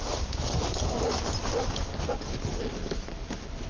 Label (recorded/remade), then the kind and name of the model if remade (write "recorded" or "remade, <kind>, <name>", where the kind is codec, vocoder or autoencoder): recorded